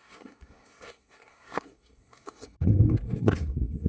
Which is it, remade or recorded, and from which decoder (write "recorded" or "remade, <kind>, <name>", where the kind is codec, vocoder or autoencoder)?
remade, codec, SNAC